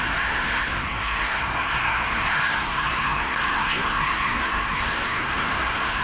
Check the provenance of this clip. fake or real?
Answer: fake